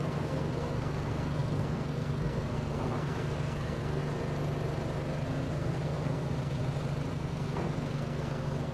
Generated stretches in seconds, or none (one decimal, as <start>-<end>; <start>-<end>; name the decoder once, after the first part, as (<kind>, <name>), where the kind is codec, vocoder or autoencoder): 0.0-4.0 (codec, SNAC); 5.5-6.6; 7.1-8.7

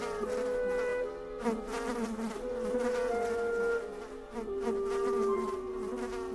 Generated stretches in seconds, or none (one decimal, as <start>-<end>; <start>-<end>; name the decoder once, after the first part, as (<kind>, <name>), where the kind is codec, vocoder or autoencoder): none

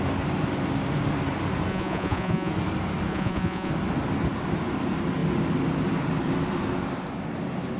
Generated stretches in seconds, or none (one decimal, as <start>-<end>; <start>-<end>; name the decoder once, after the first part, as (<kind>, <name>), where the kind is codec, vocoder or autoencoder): 1.7-2.5 (vocoder, Vocos); 3.1-3.7